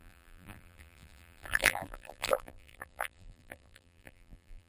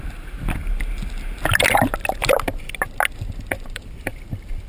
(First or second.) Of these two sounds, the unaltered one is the second